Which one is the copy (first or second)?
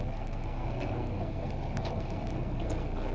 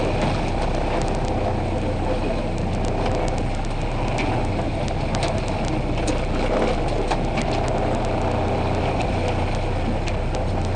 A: first